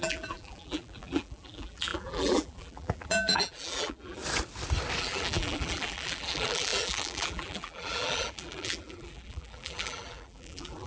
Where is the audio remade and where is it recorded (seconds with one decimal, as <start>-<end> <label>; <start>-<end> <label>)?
0.0-4.2 remade; 4.2-5.0 recorded; 5.0-10.9 remade